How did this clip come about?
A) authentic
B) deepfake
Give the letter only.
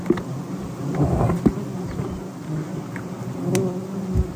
A